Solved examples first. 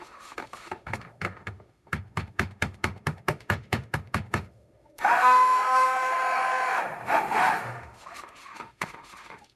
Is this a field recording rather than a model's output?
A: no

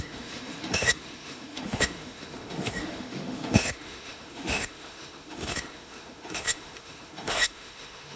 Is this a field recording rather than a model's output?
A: no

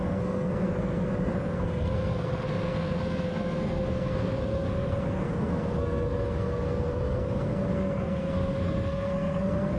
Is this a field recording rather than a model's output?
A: no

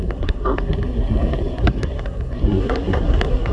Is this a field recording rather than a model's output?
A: no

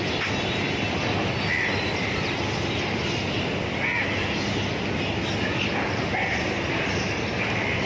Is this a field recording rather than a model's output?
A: yes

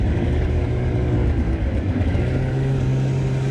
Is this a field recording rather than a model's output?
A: no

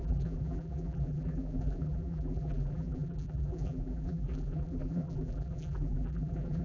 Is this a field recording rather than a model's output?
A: no